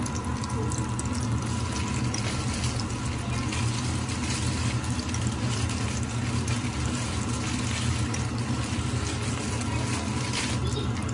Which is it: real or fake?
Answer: real